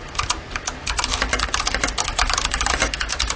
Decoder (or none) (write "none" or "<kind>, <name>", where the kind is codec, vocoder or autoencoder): none